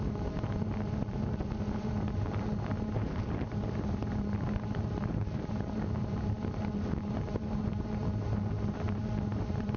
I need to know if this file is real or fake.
fake